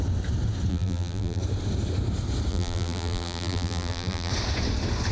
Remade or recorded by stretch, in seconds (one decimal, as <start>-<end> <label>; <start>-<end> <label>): 0.0-0.7 recorded; 0.7-1.4 remade; 1.4-2.5 recorded; 2.5-4.3 remade; 4.3-5.1 recorded

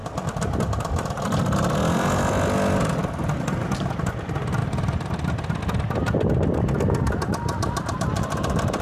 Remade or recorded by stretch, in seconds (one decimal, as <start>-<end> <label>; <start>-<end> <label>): 0.0-4.6 recorded; 4.6-5.6 remade; 5.6-8.8 recorded

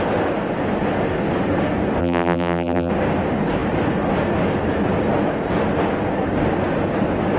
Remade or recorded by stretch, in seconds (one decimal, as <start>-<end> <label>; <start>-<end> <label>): 0.0-2.0 recorded; 2.0-2.9 remade; 2.9-7.4 recorded

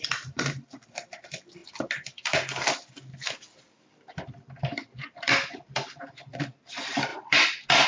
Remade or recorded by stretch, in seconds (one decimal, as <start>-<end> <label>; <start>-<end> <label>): 0.0-7.1 remade; 7.1-7.9 recorded

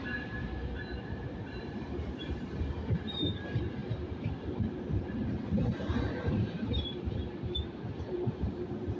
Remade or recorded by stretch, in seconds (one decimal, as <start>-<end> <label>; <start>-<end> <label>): 0.0-9.0 remade

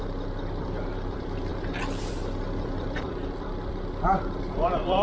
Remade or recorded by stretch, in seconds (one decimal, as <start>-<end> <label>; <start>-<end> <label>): 0.0-5.0 remade